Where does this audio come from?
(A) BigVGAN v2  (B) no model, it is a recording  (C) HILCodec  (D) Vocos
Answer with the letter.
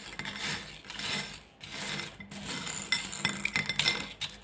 B